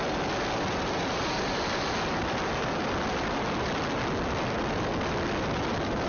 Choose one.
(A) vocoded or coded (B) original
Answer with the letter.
B